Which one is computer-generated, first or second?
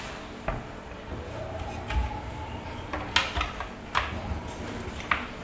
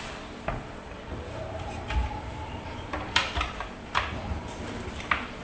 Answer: second